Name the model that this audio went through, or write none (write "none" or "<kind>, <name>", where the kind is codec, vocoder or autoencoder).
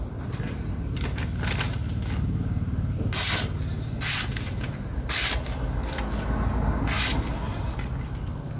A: none